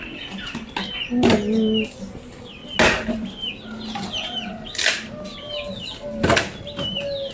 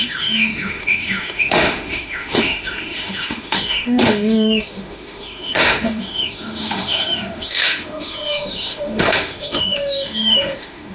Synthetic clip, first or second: second